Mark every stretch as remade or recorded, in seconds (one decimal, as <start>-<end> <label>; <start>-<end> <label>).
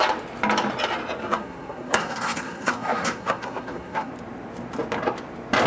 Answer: 0.0-1.2 recorded; 1.2-4.1 remade; 4.1-5.7 recorded